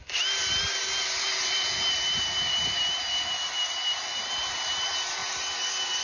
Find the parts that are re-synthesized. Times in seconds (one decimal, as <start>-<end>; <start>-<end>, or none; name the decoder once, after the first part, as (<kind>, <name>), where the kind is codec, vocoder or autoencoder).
none